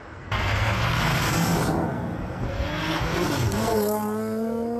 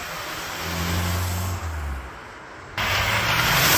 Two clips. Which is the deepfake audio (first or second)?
first